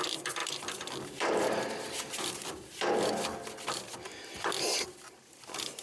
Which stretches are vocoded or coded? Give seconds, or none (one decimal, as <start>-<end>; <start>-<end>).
0.4-3.9; 4.7-5.8

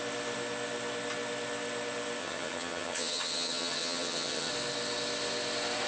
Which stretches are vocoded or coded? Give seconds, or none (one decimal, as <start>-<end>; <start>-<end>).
2.2-4.5

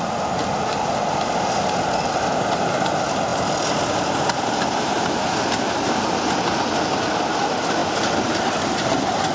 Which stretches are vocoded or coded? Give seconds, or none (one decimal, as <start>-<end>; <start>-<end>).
none